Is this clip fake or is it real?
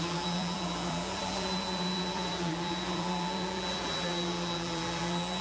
fake